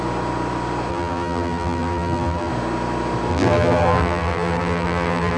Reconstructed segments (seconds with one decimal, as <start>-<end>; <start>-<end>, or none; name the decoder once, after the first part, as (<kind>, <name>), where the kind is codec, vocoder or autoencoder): 0.9-2.5 (vocoder, BigVGAN v2); 3.3-5.4